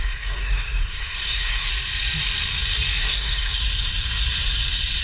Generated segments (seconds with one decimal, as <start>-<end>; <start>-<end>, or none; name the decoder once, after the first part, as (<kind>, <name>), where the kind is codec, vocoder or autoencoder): 0.0-1.7 (codec, SNAC); 3.0-3.6